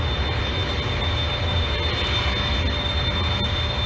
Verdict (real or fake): real